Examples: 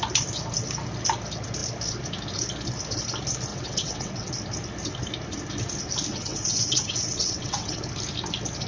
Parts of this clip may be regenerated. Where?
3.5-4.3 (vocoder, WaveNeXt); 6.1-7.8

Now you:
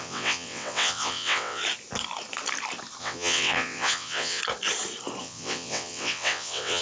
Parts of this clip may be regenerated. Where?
0.0-1.6 (vocoder, WaveNeXt); 3.0-4.4; 5.2-6.8

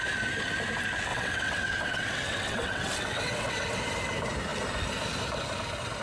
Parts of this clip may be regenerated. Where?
1.1-3.8 (vocoder, WaveNeXt)

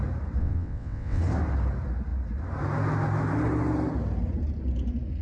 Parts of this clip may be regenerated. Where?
0.4-1.2 (vocoder, WaveNeXt)

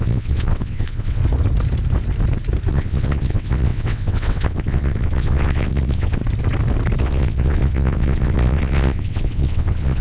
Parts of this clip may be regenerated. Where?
0.0-1.2 (vocoder, WaveNeXt); 2.7-6.2; 7.0-10.0